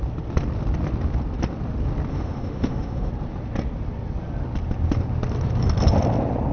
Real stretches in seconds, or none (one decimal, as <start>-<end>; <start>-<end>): 0.0-2.1; 3.1-6.5